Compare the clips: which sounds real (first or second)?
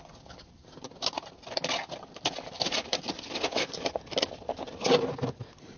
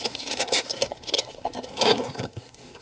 first